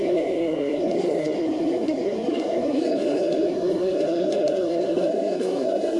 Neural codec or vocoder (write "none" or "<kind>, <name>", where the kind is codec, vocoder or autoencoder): codec, SNAC